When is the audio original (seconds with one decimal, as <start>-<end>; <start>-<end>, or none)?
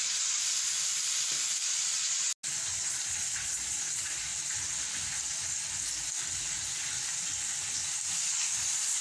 0.4-1.6; 2.3-2.9; 4.3-8.3